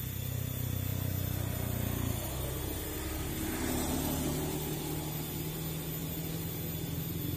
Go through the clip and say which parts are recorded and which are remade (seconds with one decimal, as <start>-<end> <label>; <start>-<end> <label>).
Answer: 0.0-7.4 recorded